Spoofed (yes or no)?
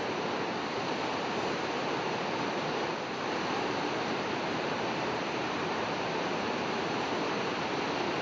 yes